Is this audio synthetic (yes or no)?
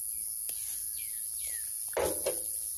no